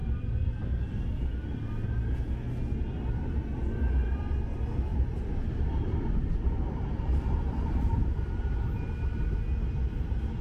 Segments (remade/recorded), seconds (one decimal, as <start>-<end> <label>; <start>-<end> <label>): 0.0-4.9 recorded; 4.9-9.4 remade; 9.4-10.4 recorded